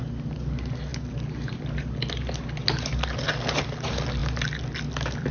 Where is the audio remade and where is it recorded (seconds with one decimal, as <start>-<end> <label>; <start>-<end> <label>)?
0.0-5.3 recorded